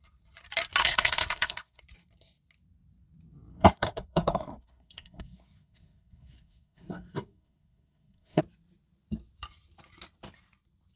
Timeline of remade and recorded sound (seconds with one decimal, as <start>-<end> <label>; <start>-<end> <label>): 0.0-0.8 recorded; 0.8-1.8 remade; 1.8-3.5 recorded; 3.5-8.4 remade; 8.4-11.0 recorded